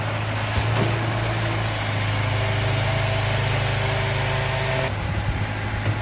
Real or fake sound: real